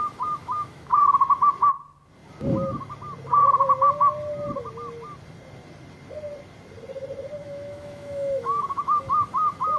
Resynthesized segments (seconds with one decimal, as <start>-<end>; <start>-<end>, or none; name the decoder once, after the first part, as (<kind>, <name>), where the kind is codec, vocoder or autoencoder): 0.4-1.5 (autoencoder, DAC-VAE); 7.4-9.0